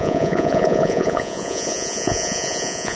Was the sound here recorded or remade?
remade